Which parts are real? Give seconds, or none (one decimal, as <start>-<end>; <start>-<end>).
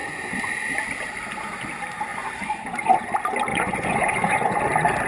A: 0.7-2.1; 3.0-3.5; 4.6-5.1